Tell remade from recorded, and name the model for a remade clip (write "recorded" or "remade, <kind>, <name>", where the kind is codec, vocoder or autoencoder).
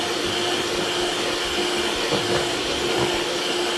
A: recorded